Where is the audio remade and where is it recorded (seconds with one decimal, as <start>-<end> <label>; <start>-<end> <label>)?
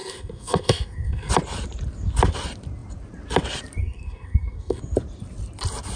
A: 0.0-1.3 remade; 1.3-3.8 recorded; 3.8-4.8 remade; 4.8-6.0 recorded